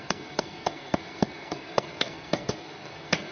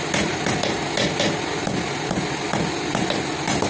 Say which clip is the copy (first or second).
first